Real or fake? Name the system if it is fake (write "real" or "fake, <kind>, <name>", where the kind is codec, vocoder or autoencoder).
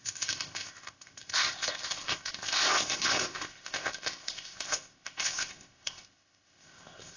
fake, codec, ZipCodec